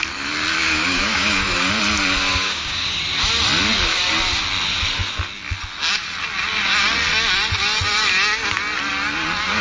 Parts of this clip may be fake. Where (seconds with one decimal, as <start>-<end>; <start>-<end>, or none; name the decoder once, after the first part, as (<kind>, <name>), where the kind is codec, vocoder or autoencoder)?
0.6-1.7 (codec, DAC); 2.3-3.0